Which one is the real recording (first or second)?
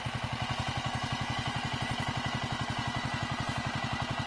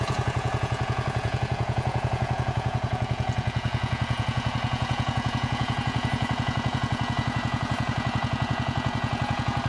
first